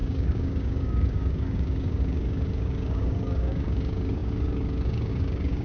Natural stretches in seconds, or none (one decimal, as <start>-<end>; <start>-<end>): none